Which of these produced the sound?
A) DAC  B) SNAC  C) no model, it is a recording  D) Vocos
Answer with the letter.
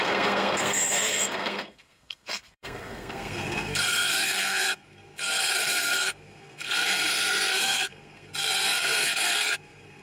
B